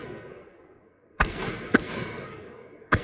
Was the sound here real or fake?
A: fake